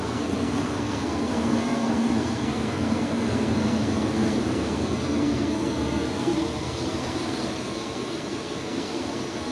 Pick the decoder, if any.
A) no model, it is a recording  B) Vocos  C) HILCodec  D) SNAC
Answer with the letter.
D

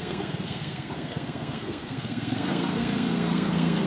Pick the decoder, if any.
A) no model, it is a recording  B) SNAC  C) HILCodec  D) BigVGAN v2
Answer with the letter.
B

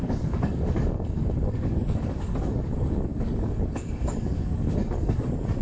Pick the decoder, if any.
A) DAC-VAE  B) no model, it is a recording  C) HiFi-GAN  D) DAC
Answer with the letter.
D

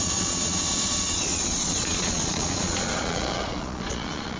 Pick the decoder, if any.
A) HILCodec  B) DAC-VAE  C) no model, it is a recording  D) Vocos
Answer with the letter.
D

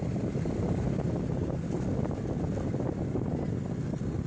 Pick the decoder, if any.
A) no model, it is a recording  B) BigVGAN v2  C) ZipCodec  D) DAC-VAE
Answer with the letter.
A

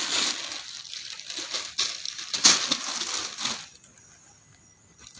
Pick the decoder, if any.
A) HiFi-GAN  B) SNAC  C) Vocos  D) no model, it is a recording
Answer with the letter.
D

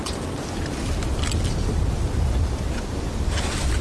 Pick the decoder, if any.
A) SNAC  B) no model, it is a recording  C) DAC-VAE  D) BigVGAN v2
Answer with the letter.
B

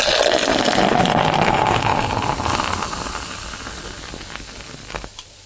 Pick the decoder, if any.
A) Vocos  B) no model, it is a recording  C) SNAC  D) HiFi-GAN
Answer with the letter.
B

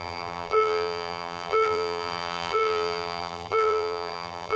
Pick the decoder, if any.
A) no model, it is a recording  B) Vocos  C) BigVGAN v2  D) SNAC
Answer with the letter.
C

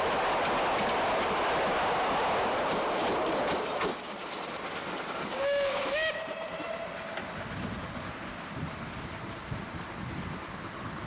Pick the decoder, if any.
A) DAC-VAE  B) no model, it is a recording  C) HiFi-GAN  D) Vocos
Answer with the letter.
B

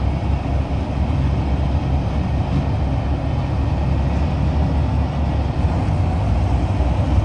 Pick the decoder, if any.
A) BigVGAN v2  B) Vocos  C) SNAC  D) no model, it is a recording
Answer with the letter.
D